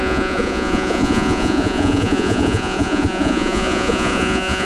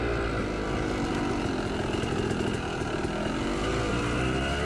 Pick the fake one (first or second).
first